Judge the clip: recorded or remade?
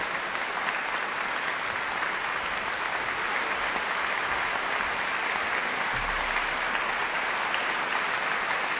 recorded